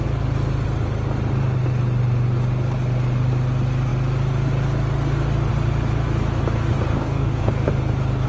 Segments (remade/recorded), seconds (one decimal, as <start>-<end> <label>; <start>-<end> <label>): 0.0-6.9 recorded; 6.9-7.5 remade; 7.5-8.3 recorded